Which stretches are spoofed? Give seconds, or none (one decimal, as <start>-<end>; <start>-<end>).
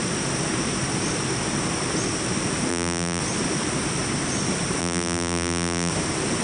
2.7-3.2; 4.8-5.9